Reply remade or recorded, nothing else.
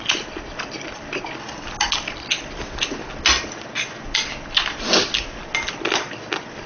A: recorded